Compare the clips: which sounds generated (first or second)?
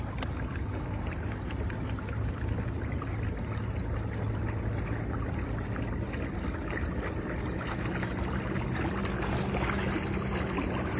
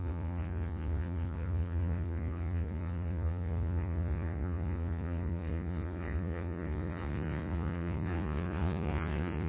second